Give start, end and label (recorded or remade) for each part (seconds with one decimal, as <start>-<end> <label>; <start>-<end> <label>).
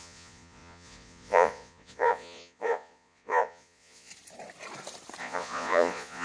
0.0-4.1 remade; 4.1-5.2 recorded; 5.2-6.2 remade